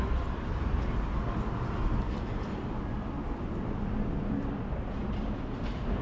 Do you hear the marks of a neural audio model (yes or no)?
no